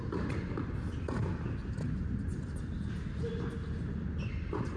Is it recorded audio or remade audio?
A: recorded